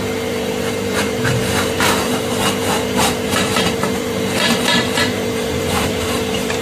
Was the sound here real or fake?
fake